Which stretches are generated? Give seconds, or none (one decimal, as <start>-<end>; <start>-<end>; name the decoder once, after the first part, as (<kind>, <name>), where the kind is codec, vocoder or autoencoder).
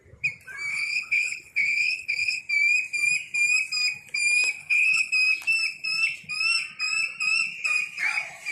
0.7-2.4 (codec, HILCodec); 4.6-5.1